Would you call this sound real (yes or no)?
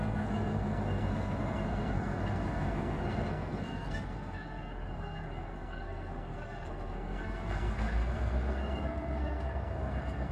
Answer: no